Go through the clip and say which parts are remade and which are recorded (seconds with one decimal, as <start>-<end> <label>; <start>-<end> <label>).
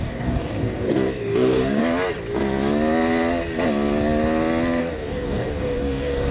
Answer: 0.0-1.8 remade; 1.8-4.8 recorded; 4.8-6.3 remade